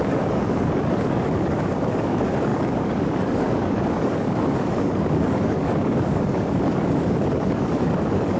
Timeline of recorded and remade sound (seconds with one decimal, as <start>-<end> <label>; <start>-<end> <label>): 0.0-8.4 remade